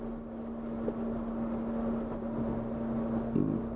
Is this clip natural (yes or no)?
yes